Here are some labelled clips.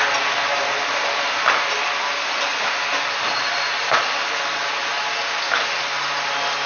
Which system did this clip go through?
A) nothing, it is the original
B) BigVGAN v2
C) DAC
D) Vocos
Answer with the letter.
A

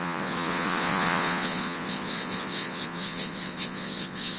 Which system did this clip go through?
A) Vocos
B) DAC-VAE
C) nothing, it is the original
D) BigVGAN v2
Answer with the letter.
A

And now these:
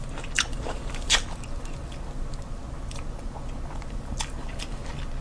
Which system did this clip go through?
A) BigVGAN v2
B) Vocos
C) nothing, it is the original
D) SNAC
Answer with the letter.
C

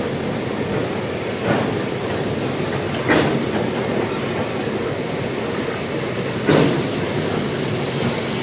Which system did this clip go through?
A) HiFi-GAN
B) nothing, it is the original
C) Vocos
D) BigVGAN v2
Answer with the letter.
B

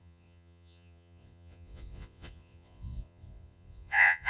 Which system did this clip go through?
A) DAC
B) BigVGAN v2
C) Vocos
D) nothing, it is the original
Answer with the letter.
C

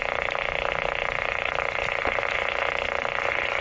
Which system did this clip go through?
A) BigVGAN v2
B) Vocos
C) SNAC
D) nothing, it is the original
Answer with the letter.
D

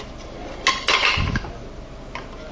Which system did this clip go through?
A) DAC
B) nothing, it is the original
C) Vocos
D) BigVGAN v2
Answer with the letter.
B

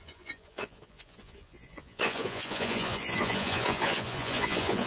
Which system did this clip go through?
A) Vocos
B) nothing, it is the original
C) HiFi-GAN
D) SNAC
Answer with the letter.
A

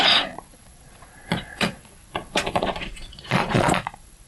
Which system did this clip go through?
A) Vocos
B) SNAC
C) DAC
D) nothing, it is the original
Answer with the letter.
A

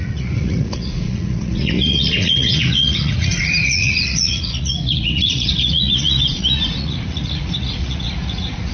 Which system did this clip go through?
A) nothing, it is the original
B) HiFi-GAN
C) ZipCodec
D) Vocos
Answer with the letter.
D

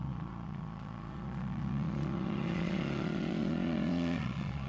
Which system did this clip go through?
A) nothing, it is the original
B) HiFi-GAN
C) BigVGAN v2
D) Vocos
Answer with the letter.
D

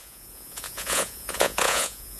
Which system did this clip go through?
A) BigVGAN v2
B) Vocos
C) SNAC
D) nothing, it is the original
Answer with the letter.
B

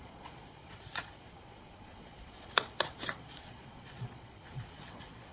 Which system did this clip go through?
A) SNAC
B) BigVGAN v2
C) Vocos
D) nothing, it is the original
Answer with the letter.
C